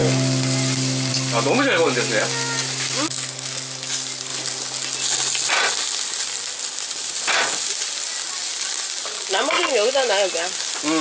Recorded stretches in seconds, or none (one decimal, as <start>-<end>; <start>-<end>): 0.0-11.0